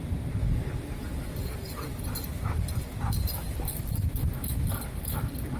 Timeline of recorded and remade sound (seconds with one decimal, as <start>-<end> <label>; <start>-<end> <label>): 0.0-5.6 recorded